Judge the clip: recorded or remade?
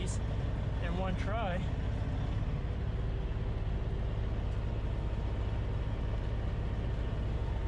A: recorded